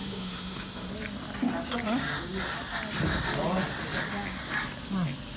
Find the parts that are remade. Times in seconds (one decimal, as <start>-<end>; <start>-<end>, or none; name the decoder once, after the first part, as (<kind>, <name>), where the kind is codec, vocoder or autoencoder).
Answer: 0.0-0.9 (autoencoder, DAC-VAE)